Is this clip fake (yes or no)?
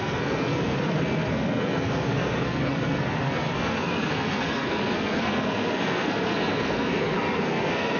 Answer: yes